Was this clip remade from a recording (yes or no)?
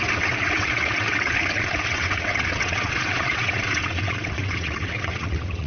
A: yes